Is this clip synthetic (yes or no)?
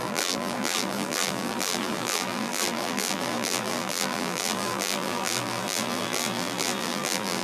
yes